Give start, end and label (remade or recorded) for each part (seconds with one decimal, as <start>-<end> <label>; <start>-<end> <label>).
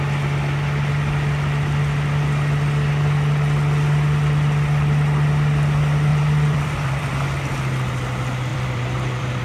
0.0-6.1 recorded; 6.1-7.1 remade; 7.1-8.5 recorded; 8.5-9.4 remade